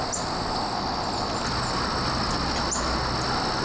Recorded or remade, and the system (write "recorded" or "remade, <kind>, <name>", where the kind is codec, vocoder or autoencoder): recorded